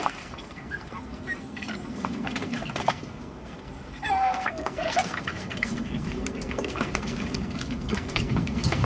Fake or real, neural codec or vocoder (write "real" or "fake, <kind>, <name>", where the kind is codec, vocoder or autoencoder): fake, codec, SNAC